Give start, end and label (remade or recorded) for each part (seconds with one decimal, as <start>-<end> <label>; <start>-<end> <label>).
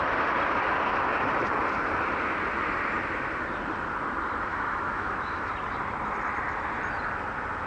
0.0-4.5 recorded; 4.5-5.5 remade; 5.5-7.7 recorded